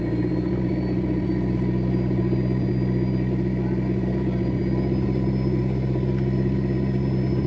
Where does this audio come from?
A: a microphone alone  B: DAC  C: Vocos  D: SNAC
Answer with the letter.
A